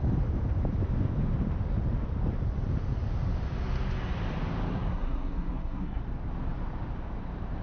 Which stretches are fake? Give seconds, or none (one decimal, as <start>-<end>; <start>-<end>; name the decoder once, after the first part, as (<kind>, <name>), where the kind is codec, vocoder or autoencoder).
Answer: 4.7-6.0 (codec, SNAC)